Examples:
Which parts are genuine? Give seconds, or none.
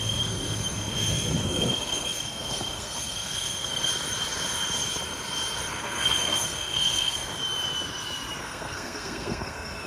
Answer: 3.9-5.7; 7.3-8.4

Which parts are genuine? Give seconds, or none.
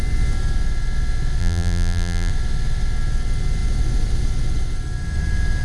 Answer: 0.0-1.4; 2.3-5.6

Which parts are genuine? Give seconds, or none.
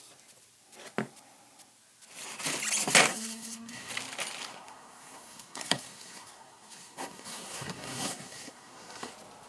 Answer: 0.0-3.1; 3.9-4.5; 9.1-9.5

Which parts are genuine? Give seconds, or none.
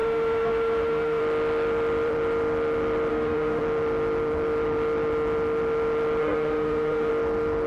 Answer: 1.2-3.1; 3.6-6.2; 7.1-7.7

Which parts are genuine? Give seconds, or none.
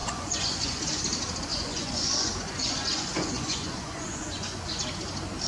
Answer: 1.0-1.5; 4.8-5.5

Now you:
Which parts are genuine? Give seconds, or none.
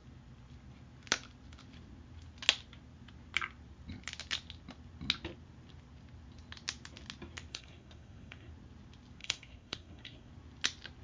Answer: 0.0-7.5; 8.5-9.2; 10.3-11.0